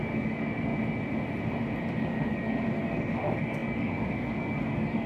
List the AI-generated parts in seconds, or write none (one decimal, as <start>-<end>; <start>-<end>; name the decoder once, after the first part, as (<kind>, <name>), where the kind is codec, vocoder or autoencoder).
0.0-0.7 (codec, DAC); 2.0-5.1